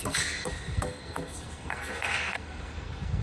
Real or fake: fake